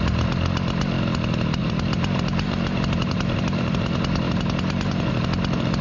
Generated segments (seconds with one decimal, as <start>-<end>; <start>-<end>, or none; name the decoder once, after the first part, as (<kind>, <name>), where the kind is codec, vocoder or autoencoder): 1.6-5.1 (vocoder, BigVGAN v2)